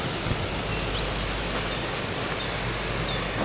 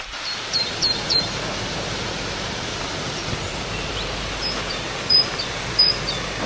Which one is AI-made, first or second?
second